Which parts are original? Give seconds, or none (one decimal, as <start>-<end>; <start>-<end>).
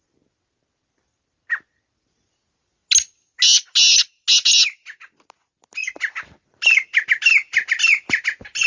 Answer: 0.0-8.7